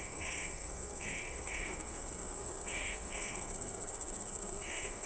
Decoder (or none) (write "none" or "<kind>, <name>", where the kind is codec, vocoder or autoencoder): codec, SNAC